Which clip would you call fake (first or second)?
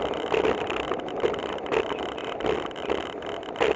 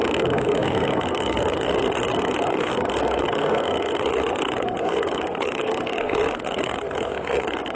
second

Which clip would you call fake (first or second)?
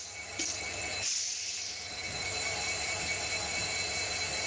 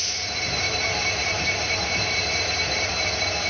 second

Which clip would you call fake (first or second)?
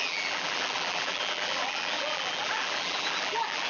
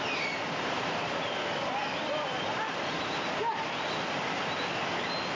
first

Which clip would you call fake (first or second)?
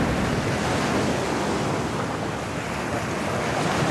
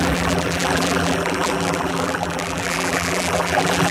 second